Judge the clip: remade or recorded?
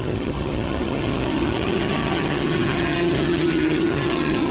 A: remade